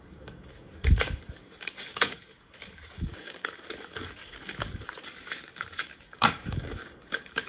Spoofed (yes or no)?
yes